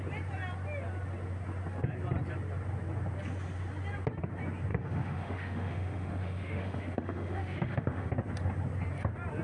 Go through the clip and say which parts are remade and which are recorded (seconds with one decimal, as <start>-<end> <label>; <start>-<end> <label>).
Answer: 0.0-4.7 recorded; 4.7-8.1 remade; 8.1-9.4 recorded